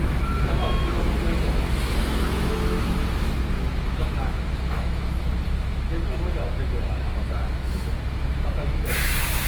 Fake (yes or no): yes